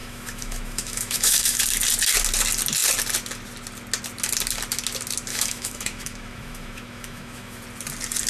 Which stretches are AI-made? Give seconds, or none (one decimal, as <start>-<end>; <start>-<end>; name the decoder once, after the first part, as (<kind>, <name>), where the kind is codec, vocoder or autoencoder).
0.0-1.6 (autoencoder, DAC-VAE); 5.3-7.6